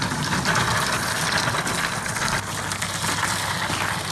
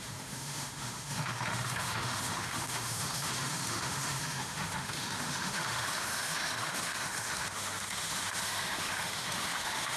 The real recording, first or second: first